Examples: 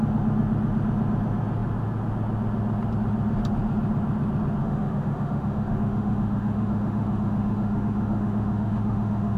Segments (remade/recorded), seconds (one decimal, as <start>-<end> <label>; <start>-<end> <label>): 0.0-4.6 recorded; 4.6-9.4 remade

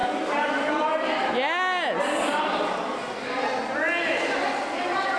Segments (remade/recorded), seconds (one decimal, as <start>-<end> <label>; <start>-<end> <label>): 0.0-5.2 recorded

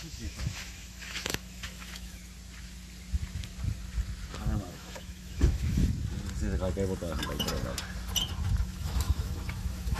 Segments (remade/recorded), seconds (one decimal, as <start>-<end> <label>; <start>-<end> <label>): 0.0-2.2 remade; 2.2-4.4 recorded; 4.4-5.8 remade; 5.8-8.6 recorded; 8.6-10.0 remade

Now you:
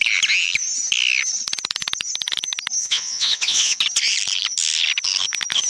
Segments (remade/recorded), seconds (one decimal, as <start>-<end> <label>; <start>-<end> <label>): 0.0-2.8 recorded; 2.8-3.8 remade; 3.8-5.7 recorded